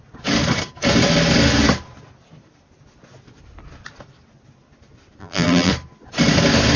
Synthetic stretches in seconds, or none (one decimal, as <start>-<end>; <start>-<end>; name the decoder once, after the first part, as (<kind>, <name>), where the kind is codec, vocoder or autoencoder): 5.2-5.7 (vocoder, BigVGAN v2)